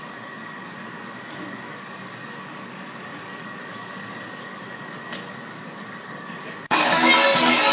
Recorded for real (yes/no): no